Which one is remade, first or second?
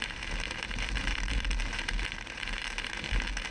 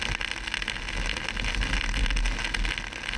first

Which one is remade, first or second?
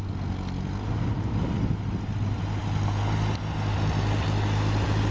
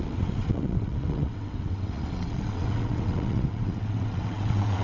second